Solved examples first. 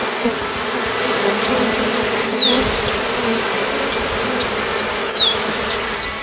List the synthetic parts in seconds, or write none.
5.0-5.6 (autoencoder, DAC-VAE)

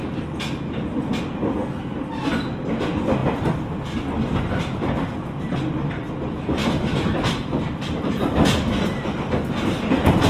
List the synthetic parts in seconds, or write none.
6.6-9.3 (vocoder, BigVGAN v2)

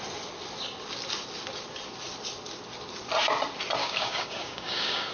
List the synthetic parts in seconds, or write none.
3.8-5.1 (codec, DAC)

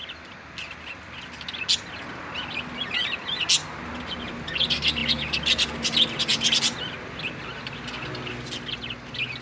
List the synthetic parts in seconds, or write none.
none